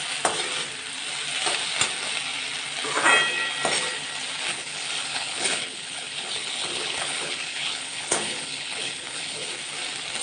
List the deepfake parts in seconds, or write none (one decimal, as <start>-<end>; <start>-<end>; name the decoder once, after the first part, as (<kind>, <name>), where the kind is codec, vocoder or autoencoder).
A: 4.5-9.5 (codec, HILCodec)